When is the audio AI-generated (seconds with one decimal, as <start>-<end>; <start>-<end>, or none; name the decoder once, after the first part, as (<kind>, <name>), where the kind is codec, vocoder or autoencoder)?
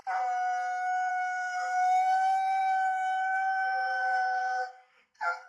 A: 1.1-5.5 (codec, SNAC)